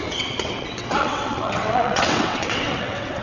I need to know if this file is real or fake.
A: fake